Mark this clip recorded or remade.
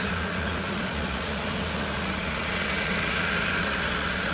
remade